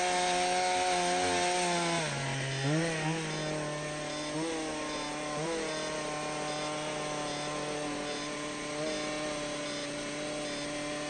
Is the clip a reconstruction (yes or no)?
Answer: no